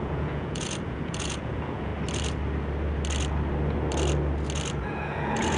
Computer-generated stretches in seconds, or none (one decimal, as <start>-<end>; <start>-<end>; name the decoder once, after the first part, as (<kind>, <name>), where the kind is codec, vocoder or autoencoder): 0.0-1.9 (vocoder, Vocos); 4.8-5.6